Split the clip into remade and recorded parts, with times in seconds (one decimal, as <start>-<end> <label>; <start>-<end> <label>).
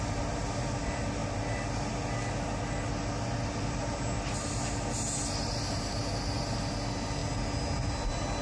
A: 0.0-8.4 recorded